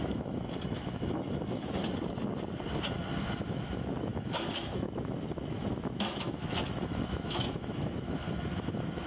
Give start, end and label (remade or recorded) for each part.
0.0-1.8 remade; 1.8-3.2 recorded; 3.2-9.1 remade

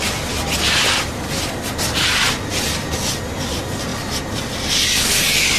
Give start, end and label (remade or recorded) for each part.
0.0-5.6 recorded

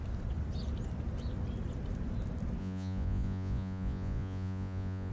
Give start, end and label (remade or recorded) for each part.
0.0-2.6 recorded; 2.6-5.1 remade

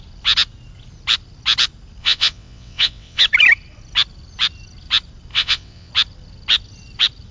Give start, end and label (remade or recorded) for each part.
0.0-2.0 recorded; 2.0-3.2 remade; 3.2-5.3 recorded; 5.3-5.9 remade; 5.9-7.3 recorded

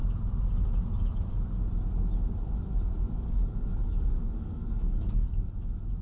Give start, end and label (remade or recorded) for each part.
0.0-3.0 recorded; 3.0-6.0 remade

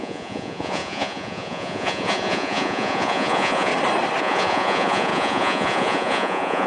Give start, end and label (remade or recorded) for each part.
0.0-3.7 remade; 3.7-4.2 recorded; 4.2-6.7 remade

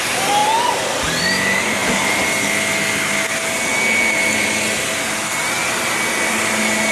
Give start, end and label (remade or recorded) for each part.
0.0-6.9 recorded